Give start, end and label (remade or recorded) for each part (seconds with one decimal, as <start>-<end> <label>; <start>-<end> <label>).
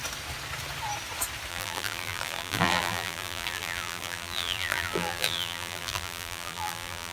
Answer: 0.0-1.5 recorded; 1.5-7.1 remade